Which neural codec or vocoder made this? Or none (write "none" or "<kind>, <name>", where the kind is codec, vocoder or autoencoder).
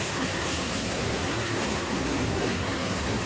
codec, SNAC